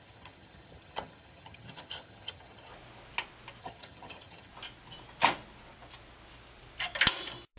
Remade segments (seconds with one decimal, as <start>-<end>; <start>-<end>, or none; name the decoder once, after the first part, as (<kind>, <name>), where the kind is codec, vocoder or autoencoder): 0.0-2.7 (vocoder, HiFi-GAN); 3.6-4.5